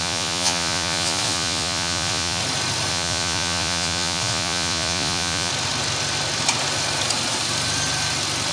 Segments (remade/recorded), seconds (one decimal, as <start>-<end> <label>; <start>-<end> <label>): 0.0-2.4 remade; 2.4-2.9 recorded; 2.9-5.5 remade; 5.5-8.5 recorded